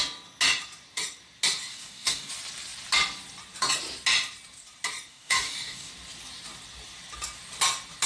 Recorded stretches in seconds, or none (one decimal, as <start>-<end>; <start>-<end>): 0.0-1.7; 2.3-5.1; 5.9-8.1